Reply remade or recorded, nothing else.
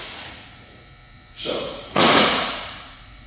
remade